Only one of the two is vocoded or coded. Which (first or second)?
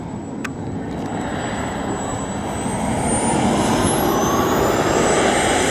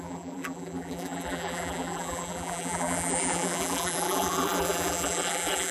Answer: second